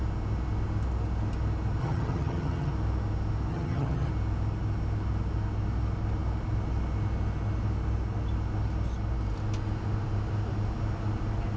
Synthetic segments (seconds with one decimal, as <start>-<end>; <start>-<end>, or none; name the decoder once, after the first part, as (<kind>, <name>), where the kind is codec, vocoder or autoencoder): 1.8-2.7 (vocoder, HiFi-GAN); 3.5-4.1